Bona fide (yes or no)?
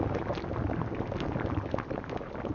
yes